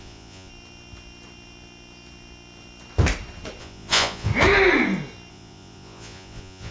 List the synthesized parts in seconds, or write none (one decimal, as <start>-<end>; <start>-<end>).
0.0-0.5; 3.6-4.3; 5.3-6.7